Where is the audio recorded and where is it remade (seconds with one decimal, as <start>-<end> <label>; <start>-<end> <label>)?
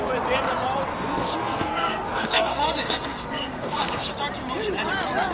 0.0-0.9 recorded; 0.9-4.1 remade; 4.1-5.3 recorded